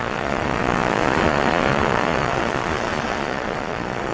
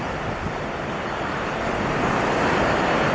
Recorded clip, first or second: second